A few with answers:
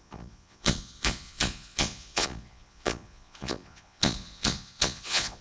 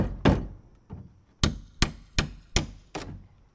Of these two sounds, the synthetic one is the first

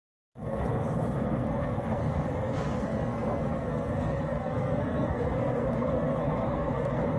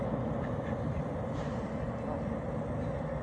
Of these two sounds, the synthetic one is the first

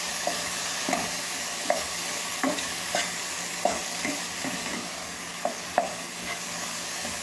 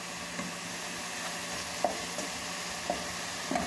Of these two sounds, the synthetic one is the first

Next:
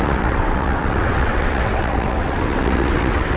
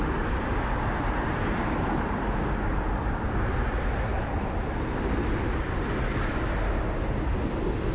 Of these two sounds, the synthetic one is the first